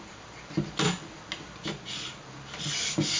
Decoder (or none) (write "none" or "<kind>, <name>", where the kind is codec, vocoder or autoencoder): none